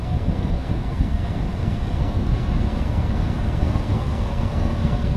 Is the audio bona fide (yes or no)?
no